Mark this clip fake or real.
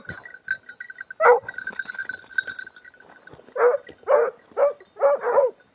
real